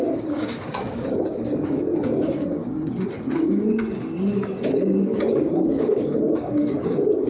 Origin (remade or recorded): remade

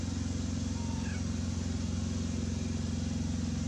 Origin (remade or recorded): recorded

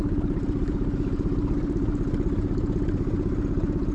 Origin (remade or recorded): recorded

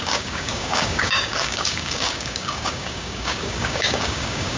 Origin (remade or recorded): remade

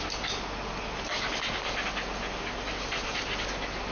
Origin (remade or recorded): recorded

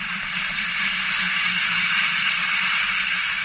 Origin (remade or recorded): recorded